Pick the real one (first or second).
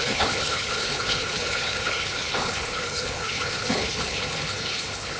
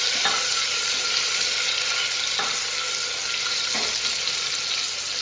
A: second